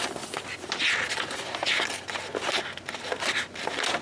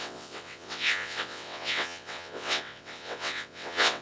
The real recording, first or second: first